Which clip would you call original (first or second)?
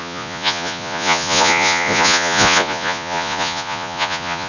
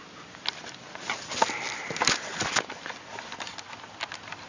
second